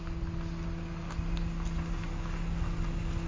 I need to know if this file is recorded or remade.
recorded